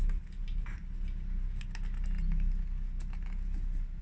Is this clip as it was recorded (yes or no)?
yes